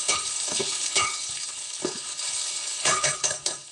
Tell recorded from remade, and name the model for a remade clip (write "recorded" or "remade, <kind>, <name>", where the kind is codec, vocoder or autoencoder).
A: remade, codec, HILCodec